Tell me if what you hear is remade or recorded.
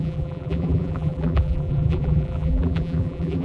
remade